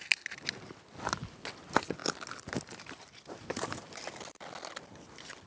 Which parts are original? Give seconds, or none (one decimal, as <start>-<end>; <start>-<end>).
0.0-5.5